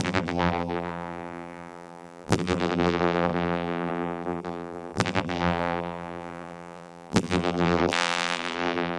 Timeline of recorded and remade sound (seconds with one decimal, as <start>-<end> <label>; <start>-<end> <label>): 0.0-9.0 remade